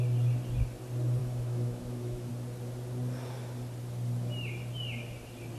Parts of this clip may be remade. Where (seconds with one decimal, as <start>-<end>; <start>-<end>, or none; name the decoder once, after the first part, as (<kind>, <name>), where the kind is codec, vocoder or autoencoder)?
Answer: 1.2-2.3 (autoencoder, DAC-VAE)